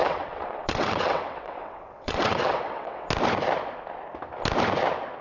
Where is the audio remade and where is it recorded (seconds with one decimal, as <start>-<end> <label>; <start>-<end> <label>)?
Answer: 0.0-3.1 remade; 3.1-5.2 recorded

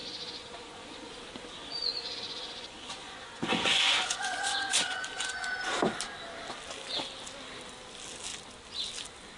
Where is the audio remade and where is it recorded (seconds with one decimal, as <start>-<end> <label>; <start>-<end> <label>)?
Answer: 0.0-1.1 remade; 1.1-1.6 recorded; 1.6-5.3 remade; 5.3-9.4 recorded

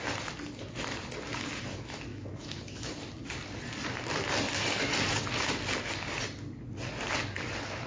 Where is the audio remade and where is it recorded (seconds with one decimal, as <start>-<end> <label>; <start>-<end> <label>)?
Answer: 0.0-2.1 recorded; 2.1-2.9 remade; 2.9-7.9 recorded

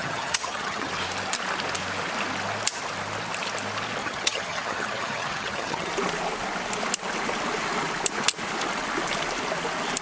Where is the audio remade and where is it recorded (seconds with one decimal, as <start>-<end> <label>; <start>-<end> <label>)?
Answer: 0.0-0.9 remade; 0.9-4.0 recorded; 4.0-5.9 remade; 5.9-10.0 recorded